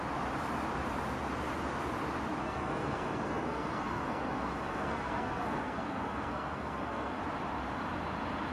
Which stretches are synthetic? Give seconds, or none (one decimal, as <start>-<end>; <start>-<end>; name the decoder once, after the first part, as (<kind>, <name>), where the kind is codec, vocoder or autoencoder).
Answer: 2.4-7.2 (codec, SNAC)